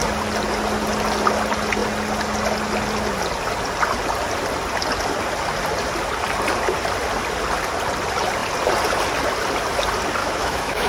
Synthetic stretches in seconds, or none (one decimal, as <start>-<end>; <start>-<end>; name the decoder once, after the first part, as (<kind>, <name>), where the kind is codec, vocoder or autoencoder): 10.2-10.9 (autoencoder, DAC-VAE)